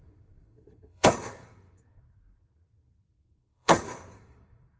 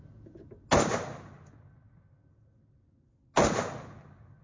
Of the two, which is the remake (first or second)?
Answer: first